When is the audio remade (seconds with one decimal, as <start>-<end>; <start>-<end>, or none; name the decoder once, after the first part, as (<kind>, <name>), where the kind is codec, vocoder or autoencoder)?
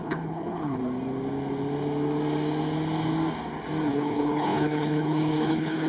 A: 0.0-0.8 (codec, HILCodec); 3.9-5.9